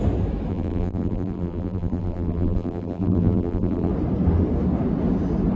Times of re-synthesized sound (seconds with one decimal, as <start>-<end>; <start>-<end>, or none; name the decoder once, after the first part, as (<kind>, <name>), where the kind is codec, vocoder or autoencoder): 0.5-3.9 (vocoder, BigVGAN v2)

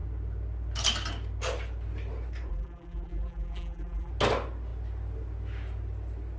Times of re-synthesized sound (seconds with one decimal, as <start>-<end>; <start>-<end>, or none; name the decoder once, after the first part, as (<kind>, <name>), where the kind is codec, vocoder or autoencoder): 2.5-4.1 (vocoder, BigVGAN v2)